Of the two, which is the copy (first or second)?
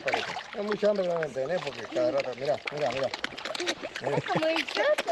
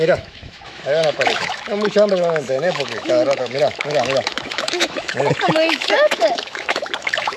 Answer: second